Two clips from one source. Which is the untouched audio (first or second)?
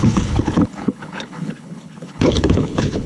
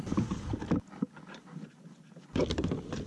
second